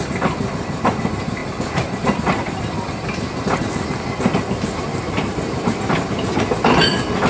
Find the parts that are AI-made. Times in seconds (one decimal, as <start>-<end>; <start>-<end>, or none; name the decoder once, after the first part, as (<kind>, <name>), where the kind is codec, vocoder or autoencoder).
4.9-5.8 (vocoder, BigVGAN v2)